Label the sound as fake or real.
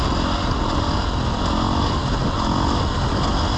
real